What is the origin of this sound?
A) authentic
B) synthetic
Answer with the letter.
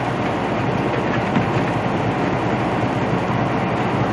A